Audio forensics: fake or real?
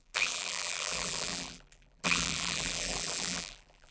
fake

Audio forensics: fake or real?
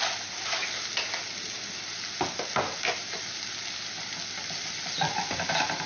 real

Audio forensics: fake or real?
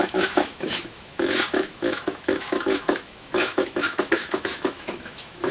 fake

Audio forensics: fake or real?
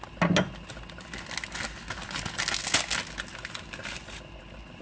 real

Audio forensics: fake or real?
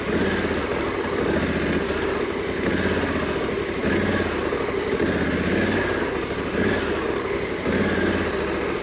real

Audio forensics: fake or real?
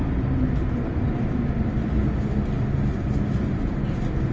real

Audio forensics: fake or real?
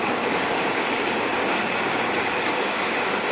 fake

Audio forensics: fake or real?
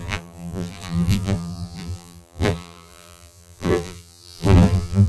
fake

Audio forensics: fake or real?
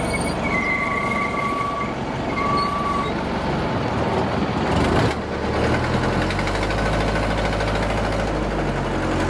real